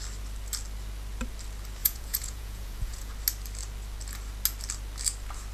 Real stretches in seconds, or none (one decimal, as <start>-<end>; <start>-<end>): 0.0-1.8; 3.1-5.5